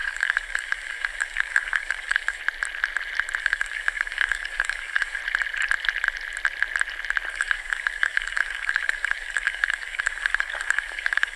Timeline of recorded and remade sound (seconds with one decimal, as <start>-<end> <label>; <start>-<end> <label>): 0.0-2.4 remade; 2.4-3.4 recorded; 3.4-5.2 remade; 5.2-7.3 recorded; 7.3-11.4 remade